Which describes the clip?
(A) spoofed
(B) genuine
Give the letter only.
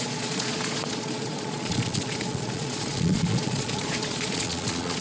A